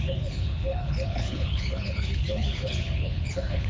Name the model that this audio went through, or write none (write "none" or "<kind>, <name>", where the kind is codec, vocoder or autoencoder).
codec, HILCodec